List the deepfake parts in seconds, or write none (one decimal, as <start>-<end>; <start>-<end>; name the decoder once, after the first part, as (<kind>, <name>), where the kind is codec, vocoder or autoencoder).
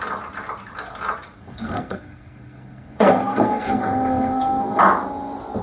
1.4-4.8 (codec, SNAC)